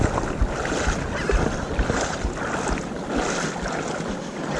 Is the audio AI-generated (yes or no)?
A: no